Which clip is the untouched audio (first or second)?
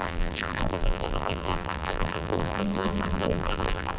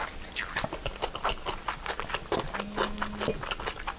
second